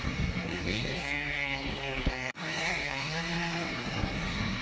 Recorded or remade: remade